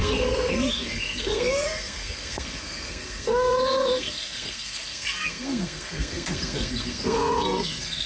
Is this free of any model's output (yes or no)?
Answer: no